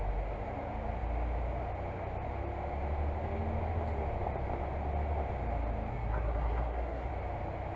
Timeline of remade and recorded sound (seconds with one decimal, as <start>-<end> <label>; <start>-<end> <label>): 0.0-5.9 recorded; 5.9-7.1 remade; 7.1-7.8 recorded